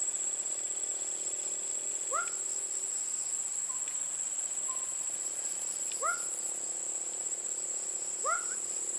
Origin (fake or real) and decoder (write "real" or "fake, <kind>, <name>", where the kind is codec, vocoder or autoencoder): real